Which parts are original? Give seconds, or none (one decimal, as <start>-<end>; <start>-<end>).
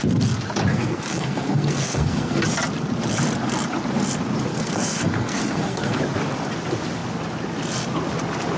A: 0.0-0.7; 2.4-4.5; 6.0-8.6